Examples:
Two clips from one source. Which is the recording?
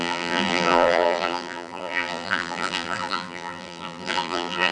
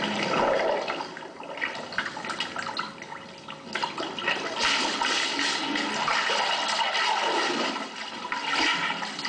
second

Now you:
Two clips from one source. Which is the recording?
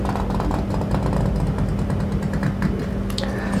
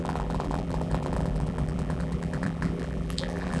first